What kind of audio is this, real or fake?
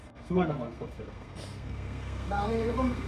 fake